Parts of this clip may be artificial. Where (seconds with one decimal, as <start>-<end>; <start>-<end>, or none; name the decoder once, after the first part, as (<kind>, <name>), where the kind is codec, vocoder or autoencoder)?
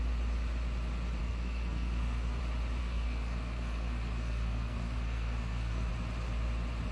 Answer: 1.2-2.4 (codec, SNAC); 2.8-5.9